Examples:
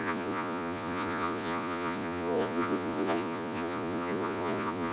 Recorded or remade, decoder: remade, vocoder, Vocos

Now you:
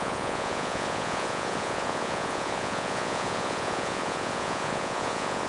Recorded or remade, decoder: remade, vocoder, Vocos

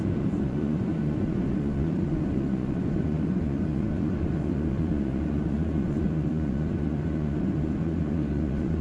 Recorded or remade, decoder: remade, vocoder, Vocos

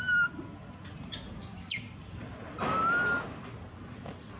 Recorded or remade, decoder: recorded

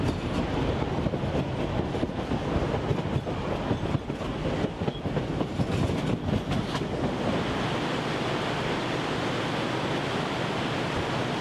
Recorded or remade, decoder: recorded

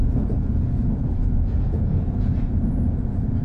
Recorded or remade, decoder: remade, vocoder, Vocos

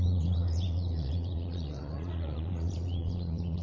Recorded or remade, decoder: remade, vocoder, Vocos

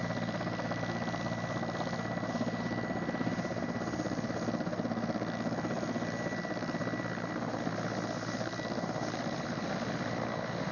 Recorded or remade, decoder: recorded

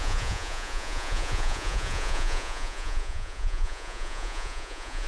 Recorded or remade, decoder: remade, vocoder, Vocos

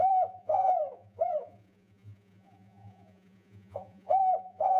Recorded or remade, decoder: remade, vocoder, Vocos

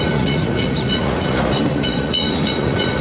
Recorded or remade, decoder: remade, vocoder, Vocos